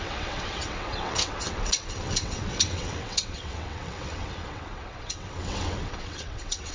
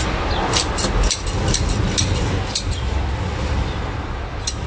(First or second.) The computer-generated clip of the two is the first